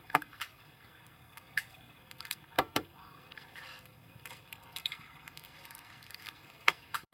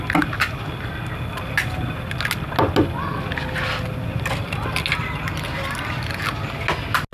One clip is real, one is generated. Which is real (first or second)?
second